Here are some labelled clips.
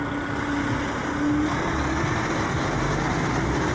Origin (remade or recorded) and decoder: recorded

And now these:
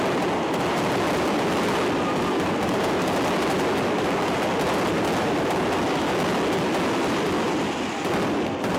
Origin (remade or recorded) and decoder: recorded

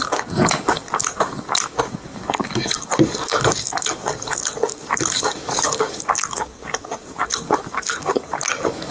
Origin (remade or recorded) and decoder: remade, codec, DAC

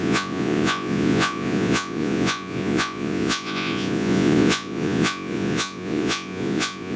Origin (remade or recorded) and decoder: remade, vocoder, Vocos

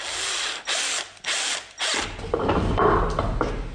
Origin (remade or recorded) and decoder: recorded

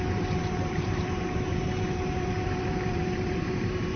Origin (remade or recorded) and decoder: remade, vocoder, BigVGAN v2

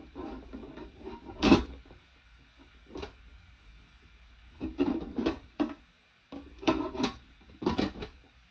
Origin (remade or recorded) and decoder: remade, codec, DAC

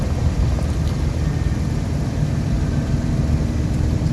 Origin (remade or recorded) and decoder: recorded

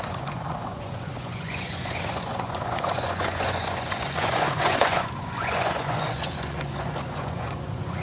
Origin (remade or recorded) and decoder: remade, vocoder, Vocos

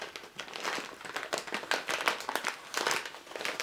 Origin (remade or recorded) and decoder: recorded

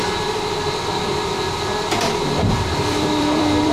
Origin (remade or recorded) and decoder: remade, vocoder, BigVGAN v2